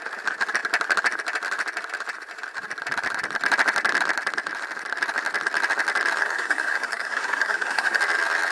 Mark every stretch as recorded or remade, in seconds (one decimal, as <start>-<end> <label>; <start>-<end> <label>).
0.0-6.2 recorded; 6.2-8.0 remade; 8.0-8.5 recorded